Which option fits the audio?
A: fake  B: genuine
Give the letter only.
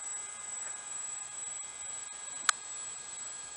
B